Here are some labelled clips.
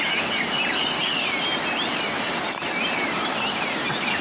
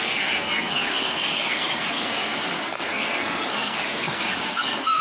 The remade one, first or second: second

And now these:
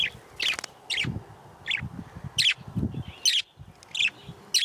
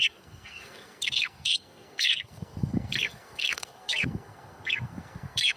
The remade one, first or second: second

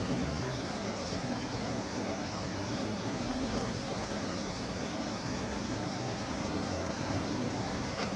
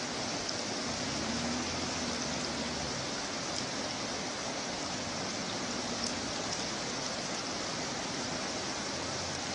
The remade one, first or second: first